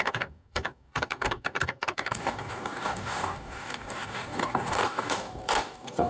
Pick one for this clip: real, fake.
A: fake